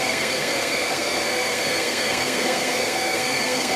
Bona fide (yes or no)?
no